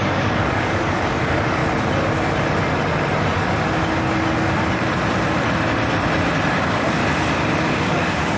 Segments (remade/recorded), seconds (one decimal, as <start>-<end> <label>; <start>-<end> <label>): 0.0-1.6 remade; 1.6-6.6 recorded; 6.6-7.0 remade; 7.0-7.7 recorded; 7.7-8.4 remade